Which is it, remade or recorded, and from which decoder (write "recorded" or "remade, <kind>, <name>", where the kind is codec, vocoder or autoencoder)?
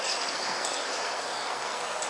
remade, codec, SNAC